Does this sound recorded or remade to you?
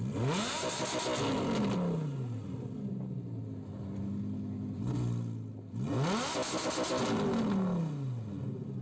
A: recorded